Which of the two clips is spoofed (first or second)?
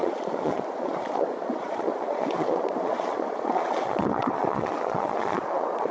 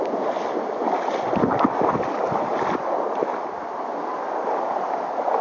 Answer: first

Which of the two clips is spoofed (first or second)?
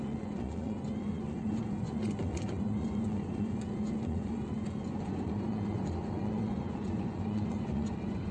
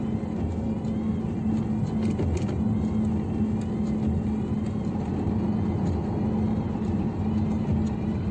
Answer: first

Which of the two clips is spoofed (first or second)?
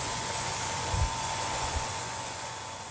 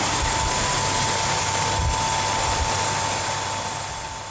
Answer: first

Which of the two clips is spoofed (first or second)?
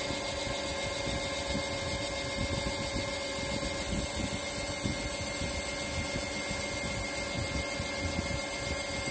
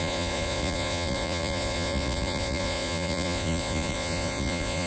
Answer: second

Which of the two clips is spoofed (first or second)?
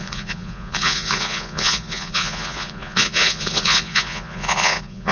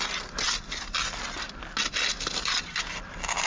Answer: first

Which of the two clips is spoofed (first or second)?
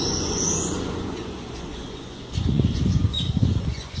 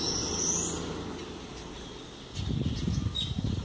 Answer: first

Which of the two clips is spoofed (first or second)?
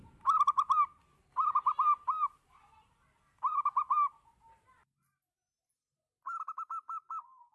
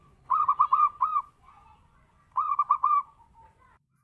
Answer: second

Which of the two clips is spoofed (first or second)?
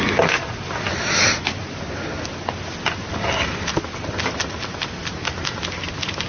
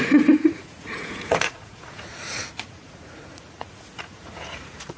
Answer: second